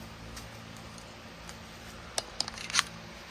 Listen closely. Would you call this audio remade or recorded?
recorded